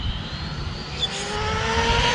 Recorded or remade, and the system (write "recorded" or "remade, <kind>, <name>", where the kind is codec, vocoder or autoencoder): recorded